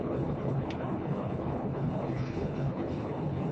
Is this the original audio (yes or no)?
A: no